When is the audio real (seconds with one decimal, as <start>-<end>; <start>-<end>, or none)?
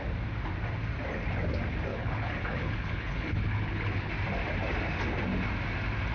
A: 0.0-1.9; 4.1-6.1